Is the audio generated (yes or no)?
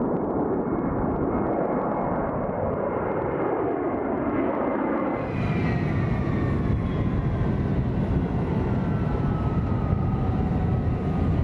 no